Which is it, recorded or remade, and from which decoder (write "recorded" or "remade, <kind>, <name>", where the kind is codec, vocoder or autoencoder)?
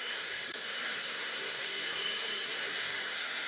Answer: remade, codec, SNAC